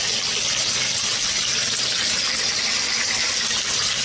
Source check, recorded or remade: recorded